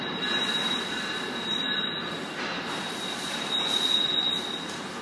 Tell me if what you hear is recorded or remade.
recorded